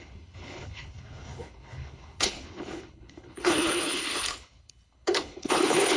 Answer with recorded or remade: remade